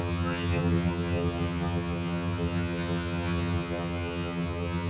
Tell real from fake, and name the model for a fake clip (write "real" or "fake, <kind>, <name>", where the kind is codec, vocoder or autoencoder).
fake, vocoder, HiFi-GAN